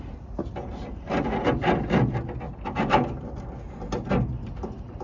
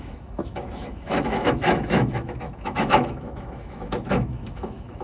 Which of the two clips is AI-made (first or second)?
second